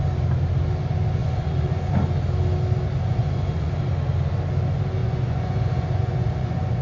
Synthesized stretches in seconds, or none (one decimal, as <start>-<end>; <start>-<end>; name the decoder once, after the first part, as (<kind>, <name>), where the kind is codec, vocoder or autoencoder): 1.2-1.9 (vocoder, Vocos); 3.1-3.7; 5.0-6.8